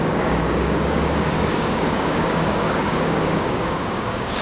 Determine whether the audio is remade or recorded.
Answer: remade